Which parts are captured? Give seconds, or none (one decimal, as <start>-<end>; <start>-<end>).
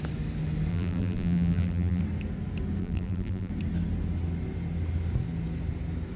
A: 0.0-0.7; 2.0-2.8; 3.5-6.2